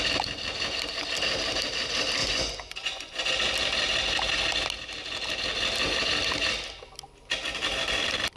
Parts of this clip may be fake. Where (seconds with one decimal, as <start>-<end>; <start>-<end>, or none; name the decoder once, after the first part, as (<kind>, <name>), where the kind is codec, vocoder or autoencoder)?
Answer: 2.2-3.3 (vocoder, Vocos)